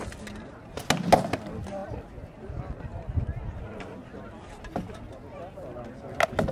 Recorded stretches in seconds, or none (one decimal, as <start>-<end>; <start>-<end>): 0.0-6.5